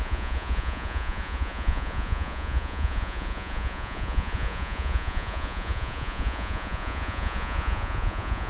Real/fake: fake